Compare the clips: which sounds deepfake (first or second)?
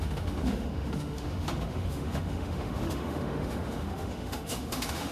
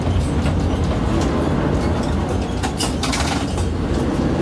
first